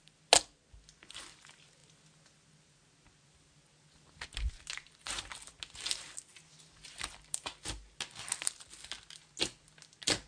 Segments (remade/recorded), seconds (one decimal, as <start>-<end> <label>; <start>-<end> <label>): 0.0-10.3 recorded